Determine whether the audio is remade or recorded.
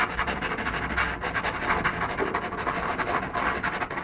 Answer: recorded